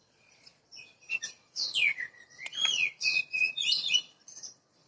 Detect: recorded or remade remade